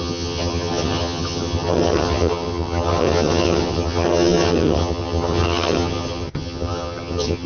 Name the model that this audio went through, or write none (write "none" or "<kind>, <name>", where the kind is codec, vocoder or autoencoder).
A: vocoder, HiFi-GAN